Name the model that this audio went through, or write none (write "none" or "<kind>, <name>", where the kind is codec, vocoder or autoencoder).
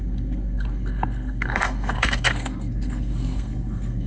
codec, SNAC